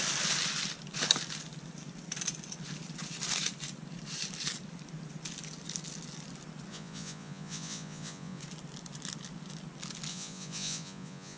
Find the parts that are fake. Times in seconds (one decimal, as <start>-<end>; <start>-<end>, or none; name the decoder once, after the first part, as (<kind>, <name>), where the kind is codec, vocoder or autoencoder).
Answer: 6.7-8.4 (vocoder, Vocos); 10.1-11.4

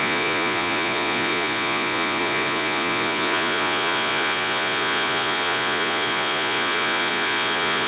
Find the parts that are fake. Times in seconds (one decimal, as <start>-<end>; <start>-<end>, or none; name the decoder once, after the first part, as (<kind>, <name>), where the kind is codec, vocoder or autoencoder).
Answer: 0.0-7.9 (vocoder, Vocos)

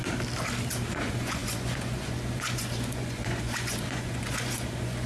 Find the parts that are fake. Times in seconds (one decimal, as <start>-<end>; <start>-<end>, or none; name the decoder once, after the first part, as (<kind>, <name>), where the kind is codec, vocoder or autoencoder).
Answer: 0.9-5.1 (vocoder, Vocos)